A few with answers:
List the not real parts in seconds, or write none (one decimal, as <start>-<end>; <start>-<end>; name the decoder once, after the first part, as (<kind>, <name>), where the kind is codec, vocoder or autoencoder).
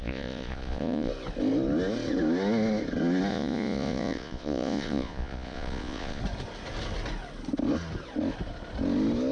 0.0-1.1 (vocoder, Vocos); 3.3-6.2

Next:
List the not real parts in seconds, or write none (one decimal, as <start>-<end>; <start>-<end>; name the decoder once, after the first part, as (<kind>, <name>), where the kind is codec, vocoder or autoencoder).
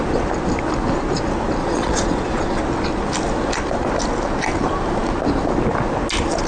1.6-2.6 (vocoder, Vocos)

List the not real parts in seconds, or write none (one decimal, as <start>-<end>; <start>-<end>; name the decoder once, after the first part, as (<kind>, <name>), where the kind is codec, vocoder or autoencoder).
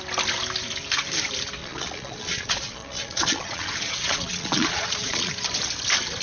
1.6-5.3 (vocoder, Vocos)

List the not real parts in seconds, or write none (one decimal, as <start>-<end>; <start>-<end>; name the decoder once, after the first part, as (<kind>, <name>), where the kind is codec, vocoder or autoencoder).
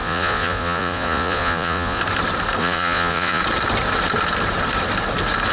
0.0-2.0 (vocoder, Vocos); 2.6-3.4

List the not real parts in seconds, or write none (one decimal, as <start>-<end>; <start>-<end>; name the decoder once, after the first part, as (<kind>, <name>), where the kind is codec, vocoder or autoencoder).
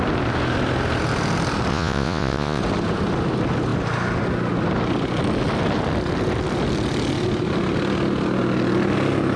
1.7-2.6 (vocoder, Vocos)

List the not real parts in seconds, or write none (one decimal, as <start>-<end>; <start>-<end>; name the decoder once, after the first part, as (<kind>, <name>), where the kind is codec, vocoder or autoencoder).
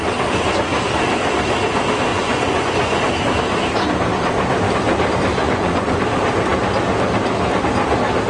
2.1-3.0 (vocoder, Vocos); 5.4-6.0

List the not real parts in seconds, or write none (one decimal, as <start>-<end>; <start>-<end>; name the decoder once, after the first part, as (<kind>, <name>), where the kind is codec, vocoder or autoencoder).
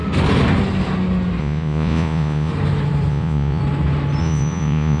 1.4-2.5 (vocoder, Vocos); 3.1-3.6; 4.2-5.0